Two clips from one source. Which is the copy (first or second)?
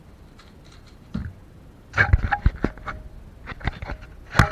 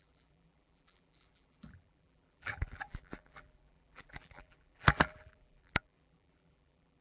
second